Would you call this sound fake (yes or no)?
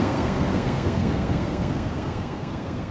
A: yes